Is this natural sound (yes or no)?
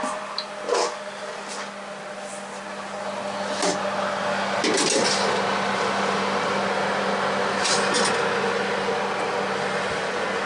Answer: yes